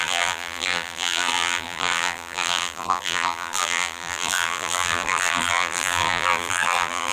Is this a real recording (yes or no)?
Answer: no